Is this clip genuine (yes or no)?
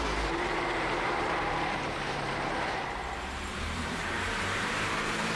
no